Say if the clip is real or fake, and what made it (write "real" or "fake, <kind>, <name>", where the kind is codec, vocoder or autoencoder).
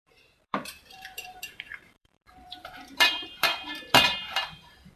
fake, vocoder, BigVGAN v2